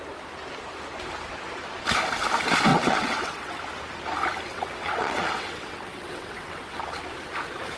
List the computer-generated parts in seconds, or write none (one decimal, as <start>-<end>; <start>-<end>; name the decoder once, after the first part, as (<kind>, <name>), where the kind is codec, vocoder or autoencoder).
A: 2.7-3.6 (vocoder, WaveNeXt); 4.5-6.8

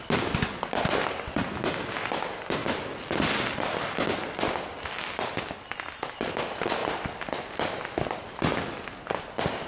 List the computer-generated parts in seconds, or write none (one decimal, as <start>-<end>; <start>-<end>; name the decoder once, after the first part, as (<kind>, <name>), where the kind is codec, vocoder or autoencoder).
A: none

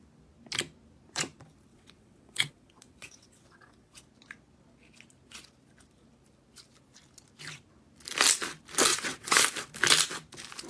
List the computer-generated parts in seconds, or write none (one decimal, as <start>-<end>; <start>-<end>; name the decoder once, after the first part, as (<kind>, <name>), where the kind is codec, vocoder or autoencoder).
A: 1.7-4.0 (vocoder, WaveNeXt); 8.9-9.4

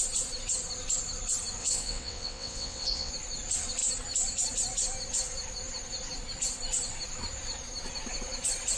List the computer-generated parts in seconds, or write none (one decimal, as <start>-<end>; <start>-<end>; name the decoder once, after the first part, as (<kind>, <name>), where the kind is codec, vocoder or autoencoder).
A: 1.6-3.1 (vocoder, WaveNeXt)

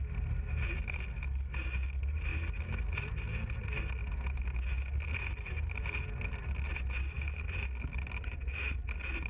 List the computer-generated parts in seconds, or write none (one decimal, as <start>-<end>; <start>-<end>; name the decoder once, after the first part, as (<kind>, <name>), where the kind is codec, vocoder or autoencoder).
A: none

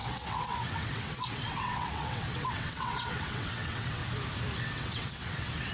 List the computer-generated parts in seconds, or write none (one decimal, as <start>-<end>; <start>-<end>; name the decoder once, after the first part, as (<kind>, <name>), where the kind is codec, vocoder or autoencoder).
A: 0.0-4.0 (vocoder, WaveNeXt); 4.6-5.7